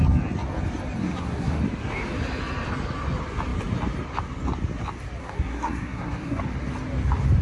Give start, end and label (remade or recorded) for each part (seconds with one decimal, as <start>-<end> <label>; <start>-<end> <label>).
0.0-1.0 recorded; 1.0-1.6 remade; 1.6-5.2 recorded; 5.2-6.4 remade; 6.4-7.4 recorded